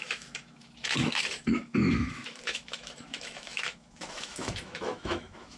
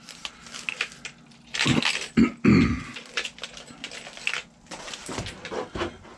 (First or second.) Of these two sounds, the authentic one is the second